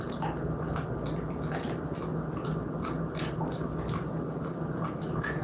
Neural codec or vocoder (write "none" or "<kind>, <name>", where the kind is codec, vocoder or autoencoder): none